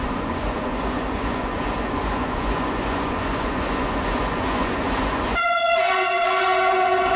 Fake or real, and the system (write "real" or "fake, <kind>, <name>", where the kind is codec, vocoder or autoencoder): fake, vocoder, Vocos